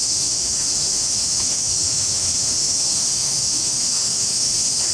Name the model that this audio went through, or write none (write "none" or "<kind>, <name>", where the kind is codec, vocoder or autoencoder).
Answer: autoencoder, DAC-VAE